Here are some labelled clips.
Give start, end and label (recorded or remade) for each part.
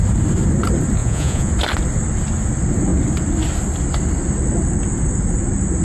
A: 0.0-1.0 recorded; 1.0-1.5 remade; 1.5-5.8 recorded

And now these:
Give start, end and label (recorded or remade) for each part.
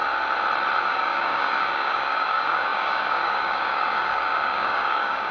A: 0.0-0.8 recorded; 0.8-5.3 remade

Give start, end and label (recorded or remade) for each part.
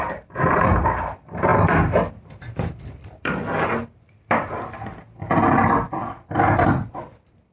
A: 0.0-6.0 remade; 6.0-7.1 recorded; 7.1-7.5 remade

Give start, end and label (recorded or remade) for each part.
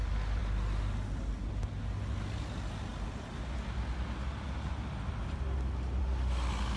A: 0.0-6.8 recorded